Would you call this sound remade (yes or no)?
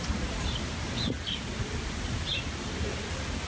no